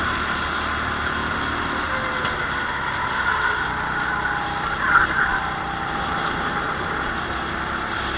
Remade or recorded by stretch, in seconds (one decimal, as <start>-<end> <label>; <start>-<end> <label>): 0.0-8.2 recorded